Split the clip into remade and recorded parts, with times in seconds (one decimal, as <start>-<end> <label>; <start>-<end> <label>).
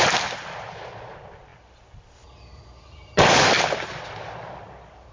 0.0-5.1 remade